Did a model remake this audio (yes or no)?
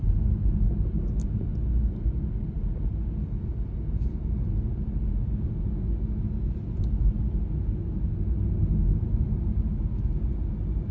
no